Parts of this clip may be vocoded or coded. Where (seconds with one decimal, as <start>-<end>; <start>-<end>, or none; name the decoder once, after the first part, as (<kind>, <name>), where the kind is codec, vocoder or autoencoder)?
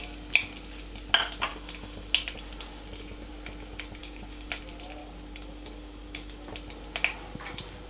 4.0-4.5 (codec, DAC); 5.0-6.5